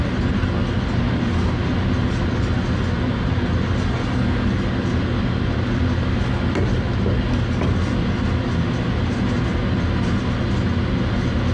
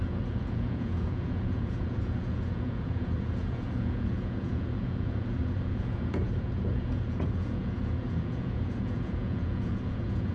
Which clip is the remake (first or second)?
second